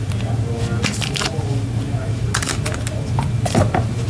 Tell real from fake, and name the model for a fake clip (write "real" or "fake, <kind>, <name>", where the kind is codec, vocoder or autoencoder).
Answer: real